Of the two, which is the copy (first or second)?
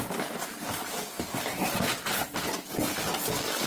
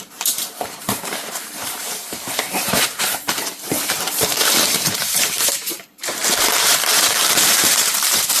second